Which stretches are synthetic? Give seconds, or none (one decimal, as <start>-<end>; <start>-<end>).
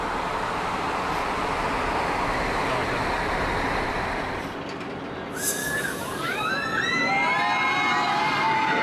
5.6-6.5